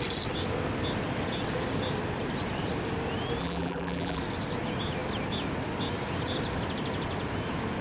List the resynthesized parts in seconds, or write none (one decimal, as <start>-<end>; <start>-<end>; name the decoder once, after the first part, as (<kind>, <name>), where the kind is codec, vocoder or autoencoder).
3.4-4.2 (vocoder, BigVGAN v2)